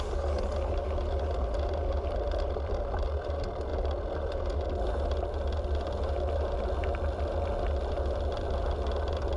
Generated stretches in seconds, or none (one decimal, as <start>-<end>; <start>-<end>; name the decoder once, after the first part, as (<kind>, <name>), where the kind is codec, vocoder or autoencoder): none